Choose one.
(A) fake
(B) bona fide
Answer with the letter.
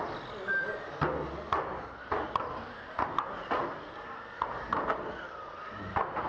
B